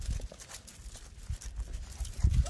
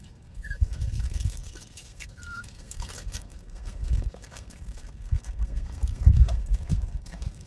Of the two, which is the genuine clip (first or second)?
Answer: first